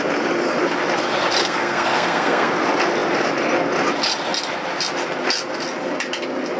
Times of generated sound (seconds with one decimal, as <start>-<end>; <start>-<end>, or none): 1.4-2.5